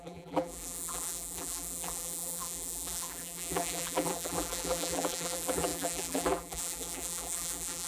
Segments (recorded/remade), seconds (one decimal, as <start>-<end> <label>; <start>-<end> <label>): 0.0-7.9 remade